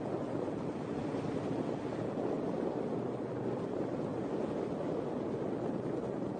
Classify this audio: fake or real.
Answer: real